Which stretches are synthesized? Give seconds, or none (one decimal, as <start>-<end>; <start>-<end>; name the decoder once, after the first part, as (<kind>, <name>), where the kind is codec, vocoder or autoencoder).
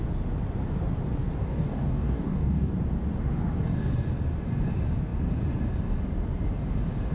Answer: 1.4-2.7 (codec, DAC)